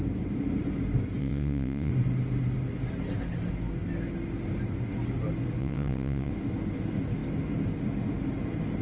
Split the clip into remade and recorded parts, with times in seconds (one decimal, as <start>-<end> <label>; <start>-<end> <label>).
0.0-1.2 recorded; 1.2-1.9 remade; 1.9-5.6 recorded; 5.6-6.3 remade; 6.3-8.8 recorded